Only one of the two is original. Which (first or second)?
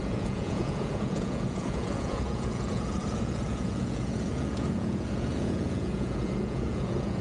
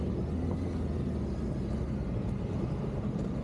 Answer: second